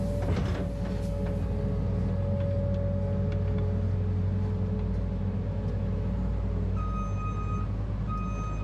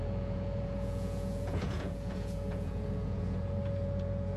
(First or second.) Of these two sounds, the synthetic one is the second